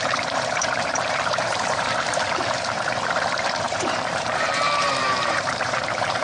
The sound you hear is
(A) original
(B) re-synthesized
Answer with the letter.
B